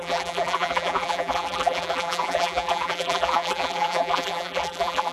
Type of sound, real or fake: fake